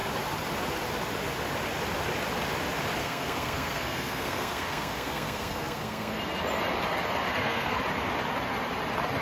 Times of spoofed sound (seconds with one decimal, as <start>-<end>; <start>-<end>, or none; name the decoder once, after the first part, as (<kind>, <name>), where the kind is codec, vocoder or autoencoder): 3.0-6.2 (codec, SNAC); 7.3-7.8